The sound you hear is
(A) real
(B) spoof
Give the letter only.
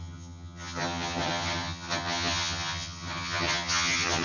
B